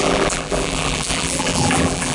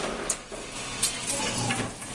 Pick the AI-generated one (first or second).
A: first